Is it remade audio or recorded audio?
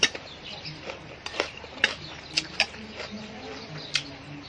recorded